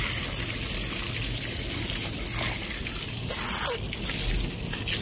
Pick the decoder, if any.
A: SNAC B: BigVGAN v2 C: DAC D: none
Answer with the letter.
D